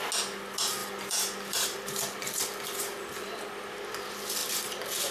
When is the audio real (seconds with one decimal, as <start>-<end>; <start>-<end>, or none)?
0.0-0.8; 3.5-5.1

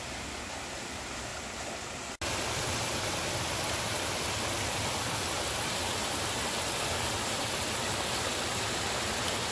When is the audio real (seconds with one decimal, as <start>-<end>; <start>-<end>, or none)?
0.0-9.5